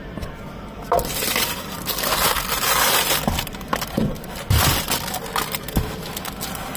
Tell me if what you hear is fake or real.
real